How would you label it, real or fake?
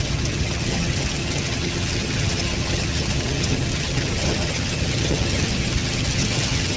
fake